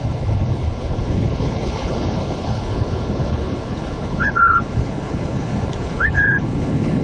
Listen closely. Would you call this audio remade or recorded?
remade